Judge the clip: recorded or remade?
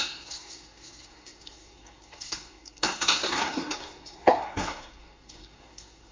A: remade